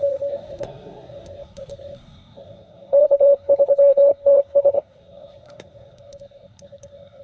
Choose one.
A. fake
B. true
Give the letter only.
A